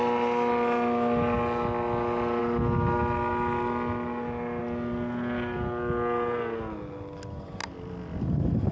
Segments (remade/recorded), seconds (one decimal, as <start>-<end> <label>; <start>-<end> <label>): 0.0-8.7 recorded